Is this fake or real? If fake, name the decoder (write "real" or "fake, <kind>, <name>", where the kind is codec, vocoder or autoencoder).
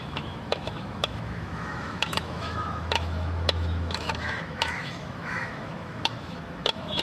fake, autoencoder, DAC-VAE